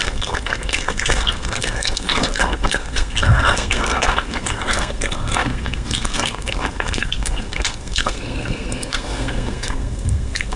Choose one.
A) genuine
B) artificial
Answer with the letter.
B